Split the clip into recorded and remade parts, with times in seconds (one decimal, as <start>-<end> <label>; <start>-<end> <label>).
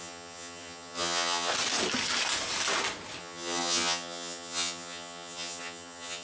0.0-1.5 remade; 1.5-3.2 recorded; 3.2-6.2 remade